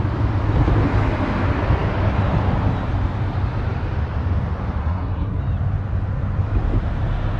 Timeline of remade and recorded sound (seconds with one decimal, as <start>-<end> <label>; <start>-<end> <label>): 0.0-4.8 recorded; 4.8-5.4 remade; 5.4-7.4 recorded